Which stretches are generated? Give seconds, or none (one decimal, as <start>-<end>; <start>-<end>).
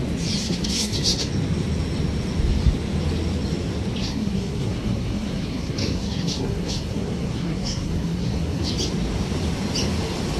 0.4-1.3; 4.0-8.7